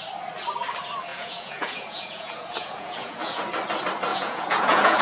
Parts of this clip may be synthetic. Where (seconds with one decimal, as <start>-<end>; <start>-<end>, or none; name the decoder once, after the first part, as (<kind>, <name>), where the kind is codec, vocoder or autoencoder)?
1.1-3.4 (vocoder, Vocos); 4.1-5.0